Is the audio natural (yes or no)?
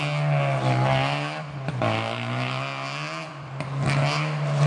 yes